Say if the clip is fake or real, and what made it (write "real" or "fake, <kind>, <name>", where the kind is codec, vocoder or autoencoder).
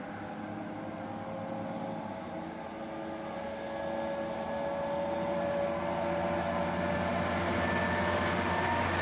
real